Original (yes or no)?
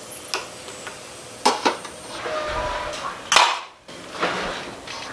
yes